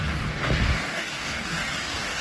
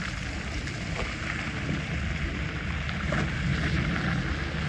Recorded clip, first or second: second